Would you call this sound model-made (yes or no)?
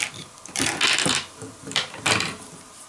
no